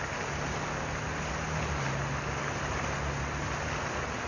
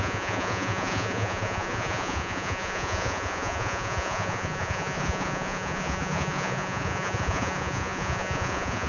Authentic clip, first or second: first